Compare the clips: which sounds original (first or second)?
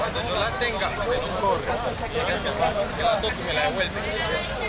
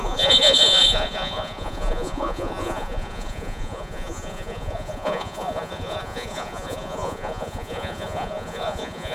first